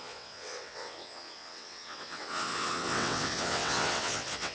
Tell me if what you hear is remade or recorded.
remade